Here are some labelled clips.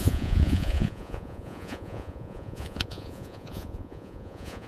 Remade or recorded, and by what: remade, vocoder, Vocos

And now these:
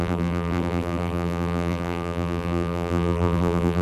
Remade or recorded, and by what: remade, vocoder, BigVGAN v2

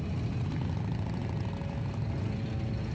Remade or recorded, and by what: recorded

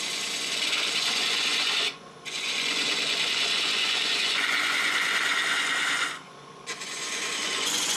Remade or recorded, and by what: remade, vocoder, Vocos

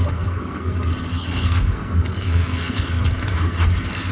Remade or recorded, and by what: remade, codec, SNAC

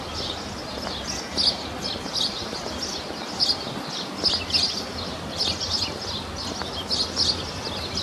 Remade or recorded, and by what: recorded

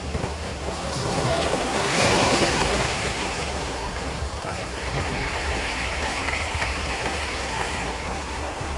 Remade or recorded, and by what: remade, codec, SNAC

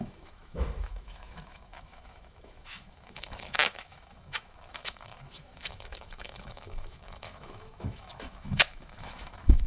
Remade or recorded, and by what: remade, autoencoder, DAC-VAE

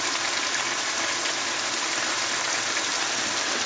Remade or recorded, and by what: recorded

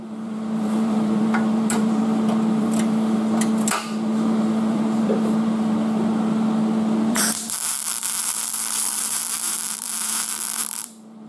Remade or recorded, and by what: remade, vocoder, BigVGAN v2